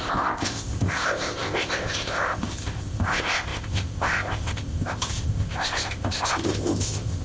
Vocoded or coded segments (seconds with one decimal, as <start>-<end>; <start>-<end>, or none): 0.0-7.2